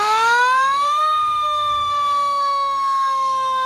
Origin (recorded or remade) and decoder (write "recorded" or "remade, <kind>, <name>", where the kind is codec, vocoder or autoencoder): remade, autoencoder, DAC-VAE